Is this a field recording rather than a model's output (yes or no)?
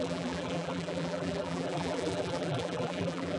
no